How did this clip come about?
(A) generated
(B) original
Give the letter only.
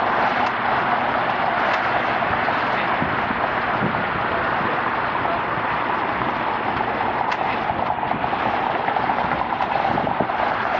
B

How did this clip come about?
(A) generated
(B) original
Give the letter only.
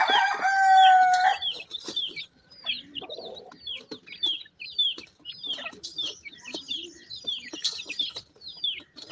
B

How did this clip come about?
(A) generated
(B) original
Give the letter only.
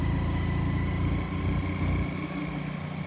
B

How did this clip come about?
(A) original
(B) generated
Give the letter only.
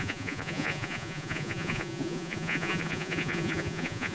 B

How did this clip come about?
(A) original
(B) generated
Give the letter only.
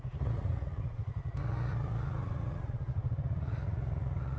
B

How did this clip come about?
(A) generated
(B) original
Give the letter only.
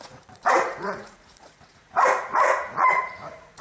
A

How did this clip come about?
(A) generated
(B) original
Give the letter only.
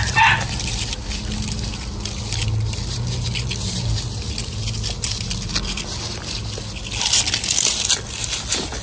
B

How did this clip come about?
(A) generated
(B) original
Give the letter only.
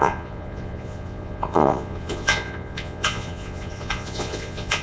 A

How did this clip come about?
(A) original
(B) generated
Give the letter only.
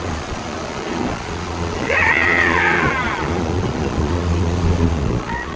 B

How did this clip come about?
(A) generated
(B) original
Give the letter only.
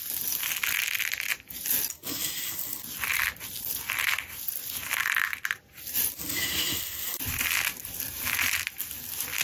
B